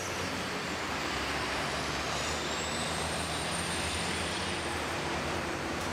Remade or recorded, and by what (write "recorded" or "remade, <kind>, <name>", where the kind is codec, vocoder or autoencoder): remade, vocoder, BigVGAN v2